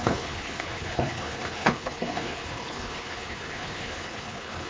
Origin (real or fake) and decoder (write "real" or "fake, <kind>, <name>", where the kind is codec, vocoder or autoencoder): fake, codec, HILCodec